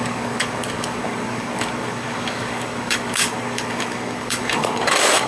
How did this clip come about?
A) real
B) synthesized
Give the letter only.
B